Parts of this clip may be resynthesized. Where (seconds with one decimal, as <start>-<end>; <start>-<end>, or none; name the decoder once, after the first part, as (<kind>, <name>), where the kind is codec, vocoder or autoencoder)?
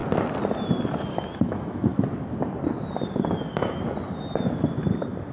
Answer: 1.3-1.9 (autoencoder, DAC-VAE)